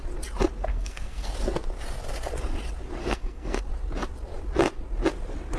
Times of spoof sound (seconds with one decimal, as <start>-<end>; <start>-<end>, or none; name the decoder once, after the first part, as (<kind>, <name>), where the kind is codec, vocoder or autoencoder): 0.7-1.3 (codec, SNAC); 3.0-3.6